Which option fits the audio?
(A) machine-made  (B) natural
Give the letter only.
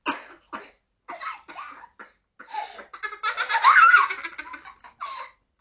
B